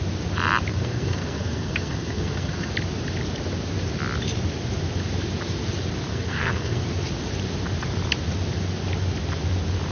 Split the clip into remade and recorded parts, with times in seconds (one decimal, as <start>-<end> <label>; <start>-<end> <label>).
0.0-0.7 recorded; 0.7-2.7 remade; 2.7-6.1 recorded; 6.1-6.8 remade; 6.8-9.9 recorded

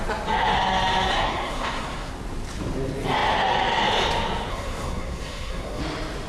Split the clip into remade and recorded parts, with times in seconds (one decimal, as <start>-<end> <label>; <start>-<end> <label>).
0.0-1.1 recorded; 1.1-2.1 remade; 2.1-4.5 recorded; 4.5-5.8 remade; 5.8-6.3 recorded

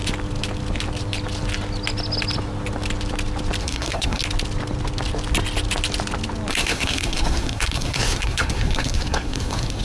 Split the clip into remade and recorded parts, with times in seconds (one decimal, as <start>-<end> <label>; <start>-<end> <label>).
0.0-3.6 recorded; 3.6-4.2 remade; 4.2-6.5 recorded; 6.5-9.8 remade